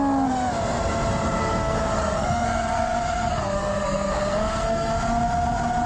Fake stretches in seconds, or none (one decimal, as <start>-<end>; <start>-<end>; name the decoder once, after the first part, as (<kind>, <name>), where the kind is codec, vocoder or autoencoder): 1.4-4.9 (codec, SNAC)